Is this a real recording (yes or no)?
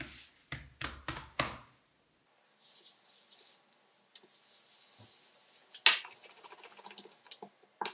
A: yes